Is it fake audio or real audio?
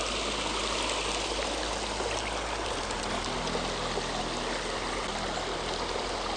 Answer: real